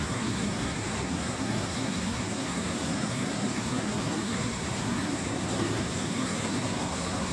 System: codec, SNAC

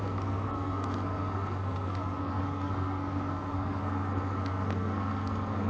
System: codec, SNAC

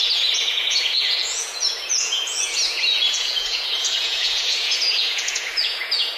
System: vocoder, Vocos